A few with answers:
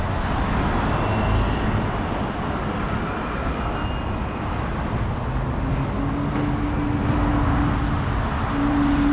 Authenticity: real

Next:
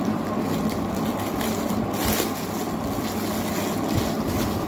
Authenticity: real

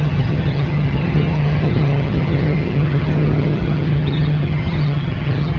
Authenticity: fake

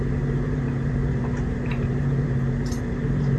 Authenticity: fake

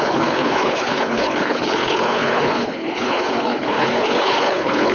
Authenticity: fake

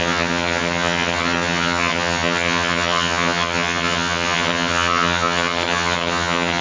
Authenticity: fake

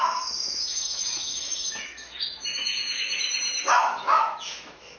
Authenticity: fake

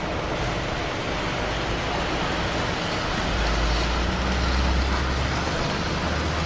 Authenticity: fake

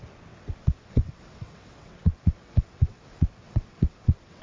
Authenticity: fake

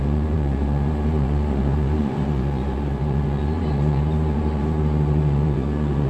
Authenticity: fake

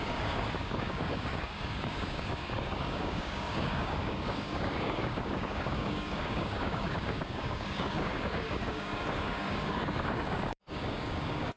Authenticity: fake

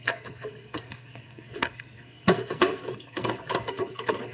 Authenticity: fake